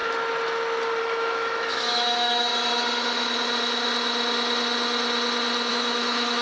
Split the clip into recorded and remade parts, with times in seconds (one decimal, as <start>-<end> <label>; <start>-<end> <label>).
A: 0.0-1.0 recorded; 1.0-2.5 remade; 2.5-5.7 recorded; 5.7-6.4 remade